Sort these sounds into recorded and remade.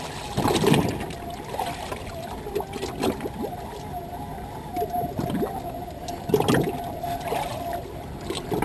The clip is recorded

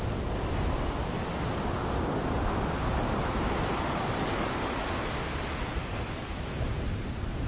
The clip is recorded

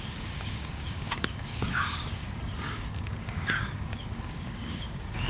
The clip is remade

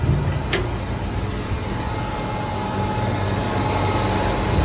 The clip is recorded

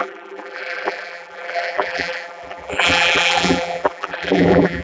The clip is remade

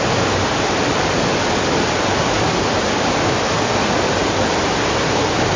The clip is remade